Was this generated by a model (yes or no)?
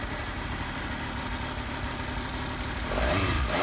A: no